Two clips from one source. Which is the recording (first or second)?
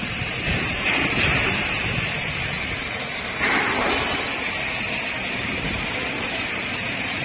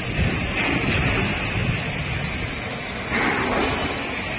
second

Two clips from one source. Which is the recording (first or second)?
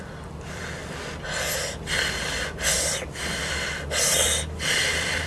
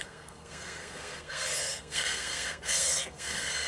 first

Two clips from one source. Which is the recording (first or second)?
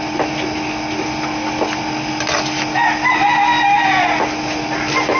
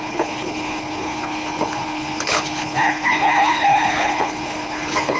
first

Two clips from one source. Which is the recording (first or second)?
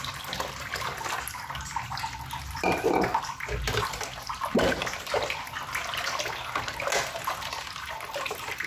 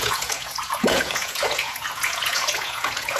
first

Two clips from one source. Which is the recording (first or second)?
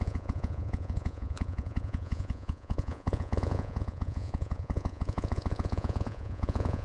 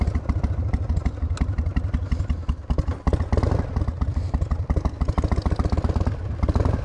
second